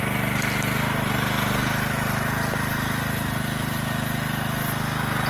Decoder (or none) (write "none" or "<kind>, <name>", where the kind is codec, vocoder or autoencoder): none